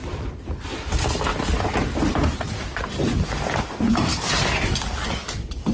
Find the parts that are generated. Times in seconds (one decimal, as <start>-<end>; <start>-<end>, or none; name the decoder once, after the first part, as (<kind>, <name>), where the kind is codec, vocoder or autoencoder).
none